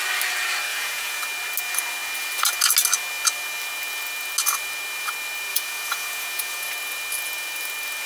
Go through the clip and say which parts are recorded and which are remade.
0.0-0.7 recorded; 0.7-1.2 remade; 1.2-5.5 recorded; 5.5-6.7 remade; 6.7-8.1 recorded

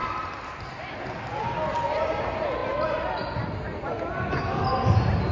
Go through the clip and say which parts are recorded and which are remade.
0.0-5.3 recorded

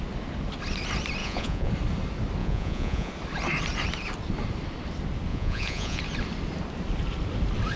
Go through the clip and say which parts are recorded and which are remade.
0.0-1.2 recorded; 1.2-1.7 remade; 1.7-2.4 recorded; 2.4-3.1 remade; 3.1-5.3 recorded; 5.3-6.0 remade; 6.0-7.8 recorded

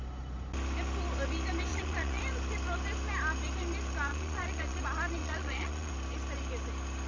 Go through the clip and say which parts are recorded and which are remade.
0.0-1.7 recorded; 1.7-2.2 remade; 2.2-4.1 recorded; 4.1-4.8 remade; 4.8-5.2 recorded; 5.2-5.9 remade; 5.9-7.1 recorded

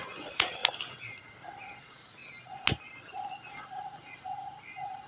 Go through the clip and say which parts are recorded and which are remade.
0.0-0.6 remade; 0.6-1.8 recorded; 1.8-2.2 remade; 2.2-5.1 recorded